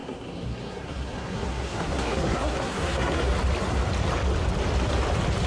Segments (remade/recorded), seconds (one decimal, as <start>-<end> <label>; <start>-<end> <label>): 0.0-3.3 remade; 3.3-5.5 recorded

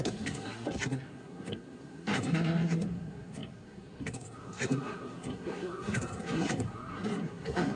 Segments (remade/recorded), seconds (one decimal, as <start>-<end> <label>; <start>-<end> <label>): 0.0-7.8 remade

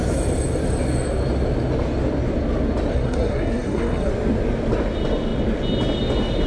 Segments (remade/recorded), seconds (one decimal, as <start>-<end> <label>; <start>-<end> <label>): 0.0-2.9 recorded; 2.9-4.1 remade; 4.1-6.5 recorded

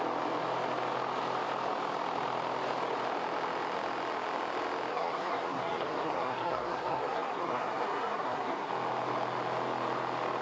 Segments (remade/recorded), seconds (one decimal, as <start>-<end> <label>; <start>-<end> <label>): 0.0-4.9 recorded; 4.9-8.7 remade; 8.7-10.4 recorded

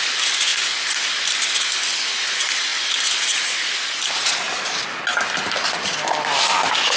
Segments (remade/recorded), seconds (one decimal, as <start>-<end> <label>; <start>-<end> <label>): 0.0-7.0 recorded

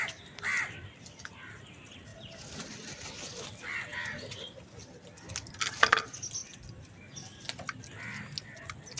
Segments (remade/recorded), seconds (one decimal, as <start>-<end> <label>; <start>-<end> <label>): 0.0-9.0 recorded

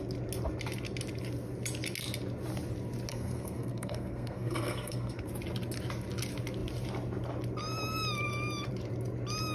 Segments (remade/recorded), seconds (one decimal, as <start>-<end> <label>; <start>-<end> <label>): 0.0-3.1 recorded; 3.1-5.3 remade; 5.3-9.5 recorded

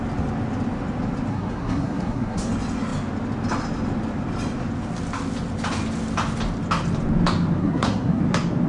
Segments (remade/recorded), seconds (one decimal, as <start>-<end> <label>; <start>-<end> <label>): 0.0-1.3 recorded; 1.3-2.5 remade; 2.5-7.6 recorded; 7.6-8.2 remade; 8.2-8.7 recorded